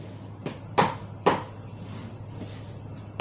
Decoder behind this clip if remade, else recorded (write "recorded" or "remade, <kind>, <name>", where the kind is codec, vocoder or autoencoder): recorded